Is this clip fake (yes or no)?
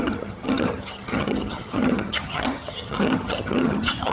yes